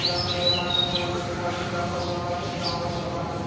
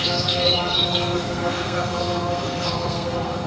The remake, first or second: second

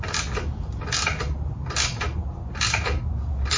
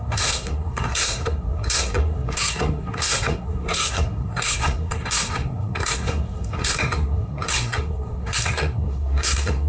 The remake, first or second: second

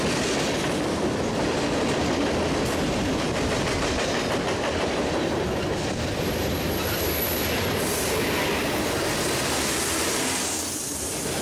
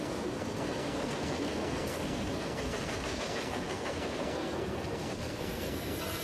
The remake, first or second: second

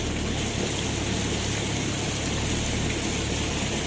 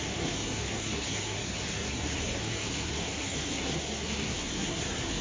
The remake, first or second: second